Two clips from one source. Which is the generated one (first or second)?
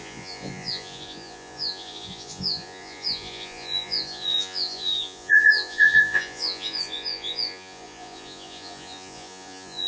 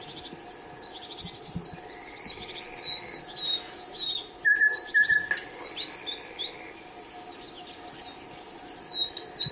first